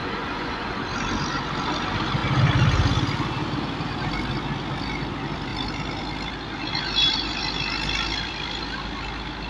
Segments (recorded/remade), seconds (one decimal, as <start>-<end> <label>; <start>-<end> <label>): 0.0-0.8 remade; 0.8-9.5 recorded